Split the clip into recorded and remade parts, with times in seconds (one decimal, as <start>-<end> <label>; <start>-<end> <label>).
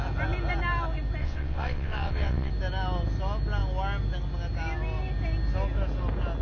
0.0-1.2 recorded; 1.2-2.5 remade; 2.5-6.4 recorded